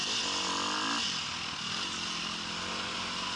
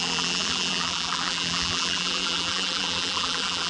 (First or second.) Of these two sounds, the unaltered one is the first